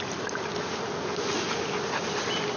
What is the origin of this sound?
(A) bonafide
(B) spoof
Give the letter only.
A